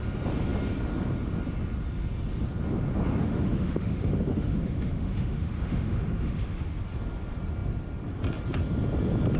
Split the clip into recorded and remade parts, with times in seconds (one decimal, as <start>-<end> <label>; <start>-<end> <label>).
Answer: 0.0-3.2 recorded; 3.2-6.7 remade; 6.7-9.4 recorded